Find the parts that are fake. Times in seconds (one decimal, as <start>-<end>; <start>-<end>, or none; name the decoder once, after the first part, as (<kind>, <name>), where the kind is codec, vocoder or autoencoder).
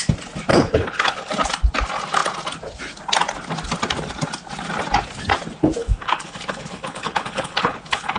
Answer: 0.5-1.3 (codec, HILCodec); 5.8-8.2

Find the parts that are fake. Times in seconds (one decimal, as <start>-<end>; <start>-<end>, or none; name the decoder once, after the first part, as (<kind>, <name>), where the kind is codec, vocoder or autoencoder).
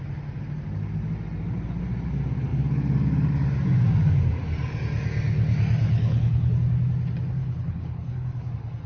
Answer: 5.8-6.5 (codec, HILCodec); 7.4-8.5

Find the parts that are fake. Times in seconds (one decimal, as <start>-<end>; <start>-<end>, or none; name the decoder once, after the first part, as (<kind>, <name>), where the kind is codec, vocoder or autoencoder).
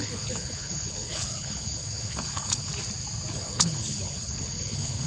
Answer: 0.0-2.7 (codec, HILCodec); 3.3-5.1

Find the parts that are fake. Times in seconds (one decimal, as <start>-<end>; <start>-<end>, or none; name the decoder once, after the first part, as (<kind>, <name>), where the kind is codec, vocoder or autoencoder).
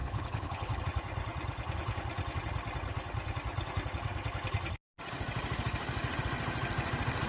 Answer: 0.0-0.8 (codec, HILCodec)